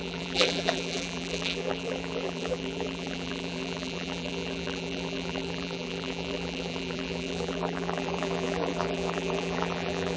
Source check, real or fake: fake